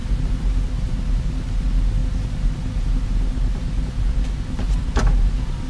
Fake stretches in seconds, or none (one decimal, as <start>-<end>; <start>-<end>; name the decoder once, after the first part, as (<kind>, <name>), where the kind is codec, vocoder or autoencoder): none

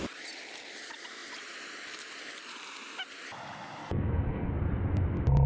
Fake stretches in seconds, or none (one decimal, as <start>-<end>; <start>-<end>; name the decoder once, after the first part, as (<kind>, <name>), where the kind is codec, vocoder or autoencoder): 3.8-4.5 (codec, SNAC)

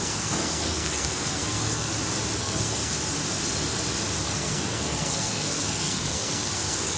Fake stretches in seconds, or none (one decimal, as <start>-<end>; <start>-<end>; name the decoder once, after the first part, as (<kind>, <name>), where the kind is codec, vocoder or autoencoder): 0.0-1.9 (codec, SNAC); 2.4-2.9; 4.2-7.0

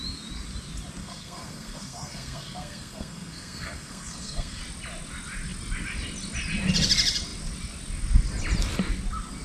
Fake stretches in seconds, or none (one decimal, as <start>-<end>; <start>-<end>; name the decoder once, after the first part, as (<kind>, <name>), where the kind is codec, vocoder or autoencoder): 1.0-4.6 (codec, SNAC)

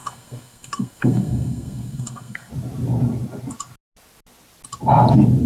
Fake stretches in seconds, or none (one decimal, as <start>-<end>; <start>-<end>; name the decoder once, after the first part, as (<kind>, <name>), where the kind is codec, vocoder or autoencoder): 0.0-2.5 (codec, SNAC)